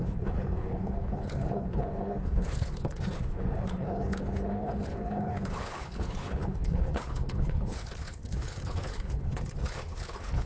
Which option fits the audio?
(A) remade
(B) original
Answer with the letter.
A